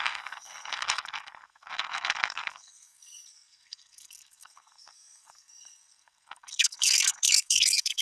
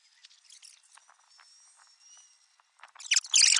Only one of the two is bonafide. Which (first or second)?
second